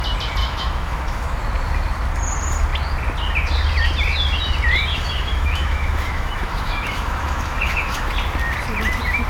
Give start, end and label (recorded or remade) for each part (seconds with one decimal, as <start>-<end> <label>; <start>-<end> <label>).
0.0-0.4 recorded; 0.4-1.4 remade; 1.4-4.9 recorded; 4.9-8.1 remade; 8.1-9.3 recorded